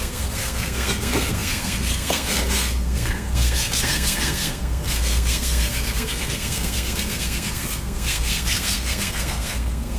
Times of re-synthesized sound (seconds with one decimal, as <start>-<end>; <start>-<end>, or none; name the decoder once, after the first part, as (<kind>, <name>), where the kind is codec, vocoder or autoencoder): 0.0-10.0 (codec, SNAC)